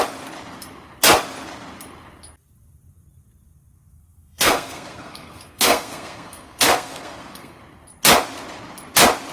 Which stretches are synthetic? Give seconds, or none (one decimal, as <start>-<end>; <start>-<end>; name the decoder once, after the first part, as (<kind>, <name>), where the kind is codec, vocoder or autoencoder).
3.9-7.6 (codec, SNAC)